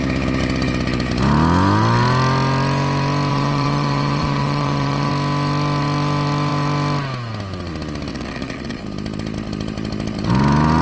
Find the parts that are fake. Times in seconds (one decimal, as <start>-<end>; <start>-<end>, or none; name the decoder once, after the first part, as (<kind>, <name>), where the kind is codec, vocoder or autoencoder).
3.3-5.1 (vocoder, Vocos); 8.1-8.8